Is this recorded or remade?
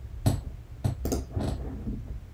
recorded